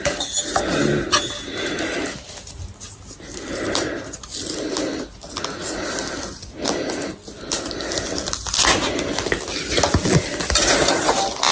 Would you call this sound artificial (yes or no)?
no